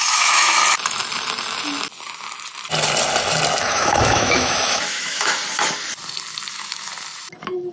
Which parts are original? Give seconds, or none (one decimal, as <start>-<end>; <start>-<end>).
0.6-3.6; 5.4-6.5; 6.9-7.7